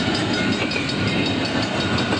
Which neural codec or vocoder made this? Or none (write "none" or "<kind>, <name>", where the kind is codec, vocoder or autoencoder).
none